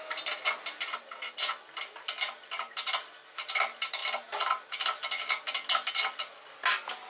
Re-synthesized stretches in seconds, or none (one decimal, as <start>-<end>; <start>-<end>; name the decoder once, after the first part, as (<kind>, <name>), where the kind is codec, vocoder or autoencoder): none